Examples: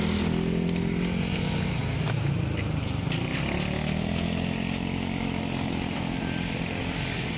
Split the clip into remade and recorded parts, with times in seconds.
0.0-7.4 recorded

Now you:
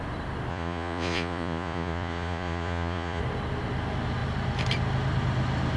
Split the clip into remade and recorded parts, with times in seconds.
0.0-0.5 recorded; 0.5-3.2 remade; 3.2-5.8 recorded

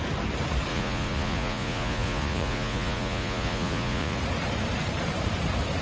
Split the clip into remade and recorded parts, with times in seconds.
0.0-0.7 recorded; 0.7-4.2 remade; 4.2-5.8 recorded

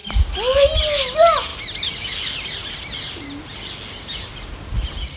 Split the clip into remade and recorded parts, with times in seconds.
0.0-5.2 recorded

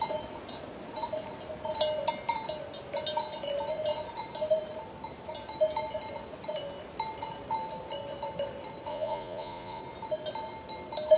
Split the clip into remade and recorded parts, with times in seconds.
0.0-8.9 recorded; 8.9-9.8 remade; 9.8-11.2 recorded